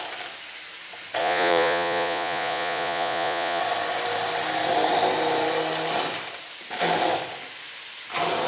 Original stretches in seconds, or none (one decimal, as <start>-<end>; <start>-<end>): 0.0-1.2; 3.6-8.5